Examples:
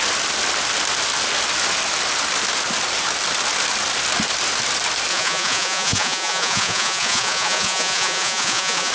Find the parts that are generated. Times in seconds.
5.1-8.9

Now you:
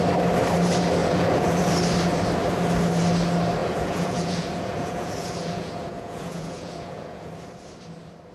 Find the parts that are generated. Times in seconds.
1.0-1.7; 3.6-7.3

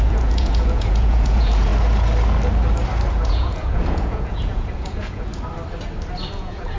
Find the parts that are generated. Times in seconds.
0.0-1.7; 3.1-5.3; 6.3-6.8

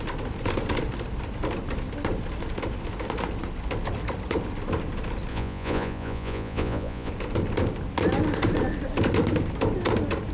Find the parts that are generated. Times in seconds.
5.3-7.1

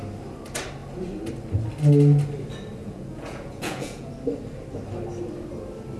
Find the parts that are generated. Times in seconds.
2.8-4.1

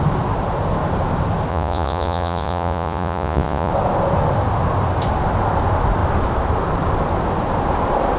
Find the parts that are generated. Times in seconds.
1.5-3.7

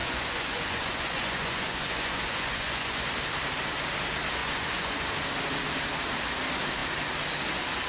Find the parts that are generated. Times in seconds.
0.0-3.1; 4.4-5.1

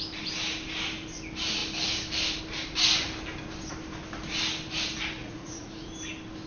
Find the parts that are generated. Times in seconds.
5.2-5.9